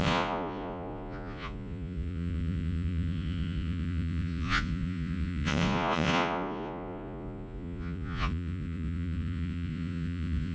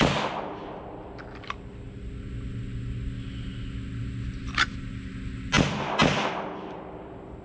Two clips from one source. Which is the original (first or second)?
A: second